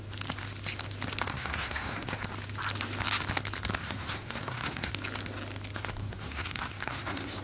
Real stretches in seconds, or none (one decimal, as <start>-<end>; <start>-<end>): 0.0-1.3; 2.1-3.8; 4.9-6.0